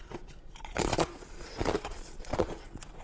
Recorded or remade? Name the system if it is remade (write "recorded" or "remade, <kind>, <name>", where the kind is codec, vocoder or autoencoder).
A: remade, vocoder, Vocos